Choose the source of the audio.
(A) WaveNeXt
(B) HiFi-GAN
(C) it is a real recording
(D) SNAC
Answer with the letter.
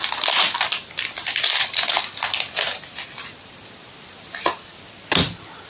C